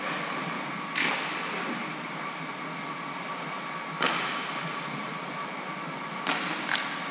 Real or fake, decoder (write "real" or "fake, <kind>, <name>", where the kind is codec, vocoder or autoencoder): real